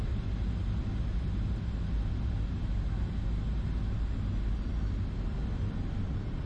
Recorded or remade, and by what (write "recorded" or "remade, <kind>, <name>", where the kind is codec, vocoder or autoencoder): recorded